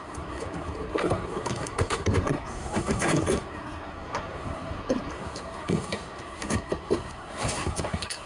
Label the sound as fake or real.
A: fake